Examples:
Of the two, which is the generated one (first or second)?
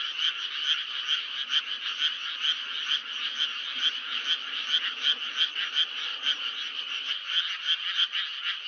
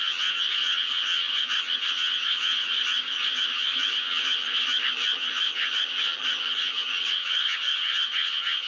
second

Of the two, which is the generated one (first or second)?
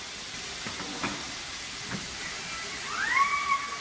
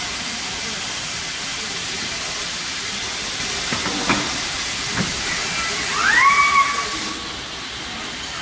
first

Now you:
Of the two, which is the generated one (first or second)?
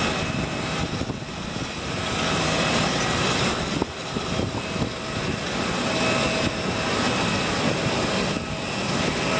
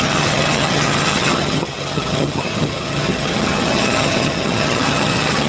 second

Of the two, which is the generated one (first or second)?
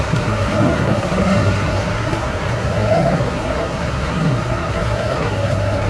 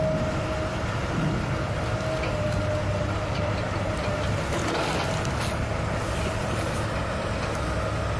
first